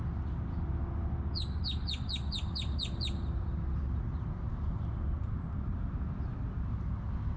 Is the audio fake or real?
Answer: real